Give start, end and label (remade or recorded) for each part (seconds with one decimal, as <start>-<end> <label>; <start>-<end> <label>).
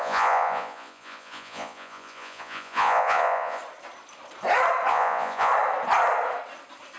0.0-3.6 remade; 3.6-4.9 recorded; 4.9-5.5 remade; 5.5-7.0 recorded